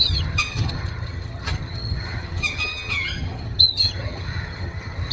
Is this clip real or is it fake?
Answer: fake